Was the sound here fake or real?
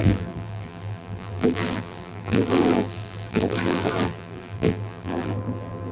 fake